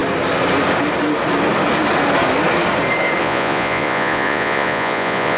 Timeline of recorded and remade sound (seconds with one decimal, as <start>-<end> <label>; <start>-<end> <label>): 0.0-3.2 recorded; 3.2-5.4 remade